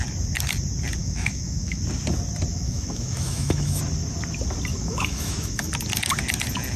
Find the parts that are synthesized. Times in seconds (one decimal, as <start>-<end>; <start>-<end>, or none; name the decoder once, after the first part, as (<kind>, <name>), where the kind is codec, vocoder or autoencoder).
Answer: 1.0-1.8 (autoencoder, DAC-VAE); 2.5-3.8; 4.7-5.7

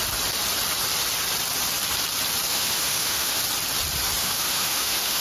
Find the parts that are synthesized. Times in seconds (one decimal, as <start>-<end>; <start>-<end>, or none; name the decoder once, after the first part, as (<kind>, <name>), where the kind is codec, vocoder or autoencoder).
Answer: 2.5-3.4 (autoencoder, DAC-VAE); 4.2-5.2

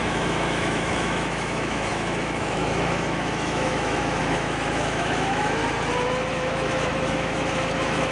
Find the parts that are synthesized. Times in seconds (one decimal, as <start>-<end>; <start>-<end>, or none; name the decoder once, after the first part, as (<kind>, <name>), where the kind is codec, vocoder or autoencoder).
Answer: 0.0-5.6 (autoencoder, DAC-VAE); 6.3-8.1